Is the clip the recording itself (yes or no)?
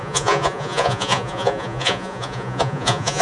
no